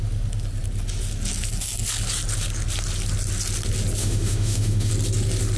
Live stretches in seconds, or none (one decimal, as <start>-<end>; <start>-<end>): 0.0-4.0; 4.9-5.6